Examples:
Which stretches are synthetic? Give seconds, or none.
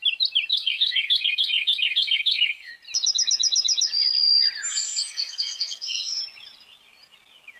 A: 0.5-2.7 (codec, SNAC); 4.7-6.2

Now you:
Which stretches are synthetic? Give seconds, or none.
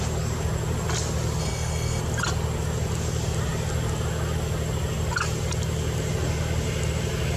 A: 1.4-2.0 (codec, SNAC)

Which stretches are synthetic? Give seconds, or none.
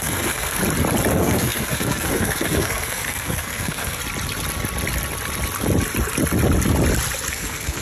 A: 0.0-0.6 (codec, SNAC); 1.1-4.0; 7.3-7.8